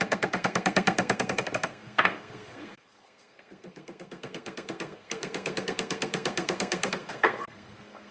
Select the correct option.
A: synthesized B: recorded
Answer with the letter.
A